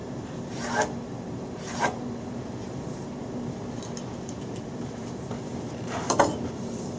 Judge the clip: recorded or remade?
remade